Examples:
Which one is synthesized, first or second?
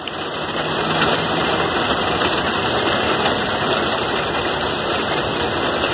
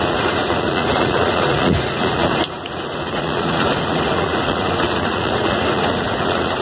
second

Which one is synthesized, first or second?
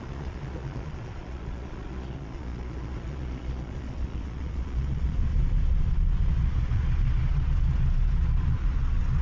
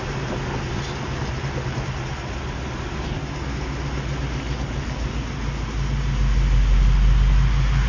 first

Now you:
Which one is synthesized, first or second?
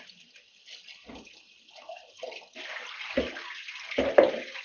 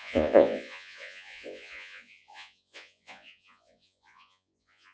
second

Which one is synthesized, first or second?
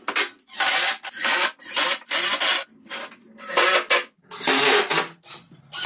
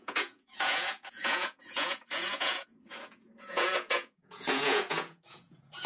second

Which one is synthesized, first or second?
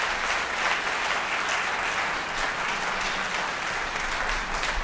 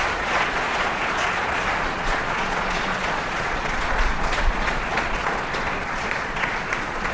second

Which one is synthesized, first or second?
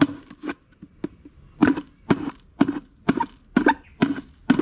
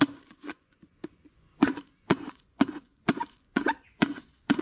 second